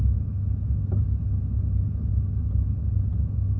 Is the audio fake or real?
real